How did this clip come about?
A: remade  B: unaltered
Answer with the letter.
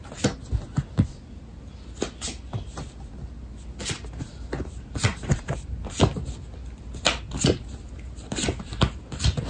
B